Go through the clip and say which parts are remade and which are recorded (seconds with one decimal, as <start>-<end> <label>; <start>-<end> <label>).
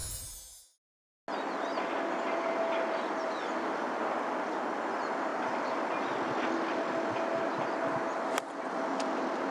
0.0-9.5 recorded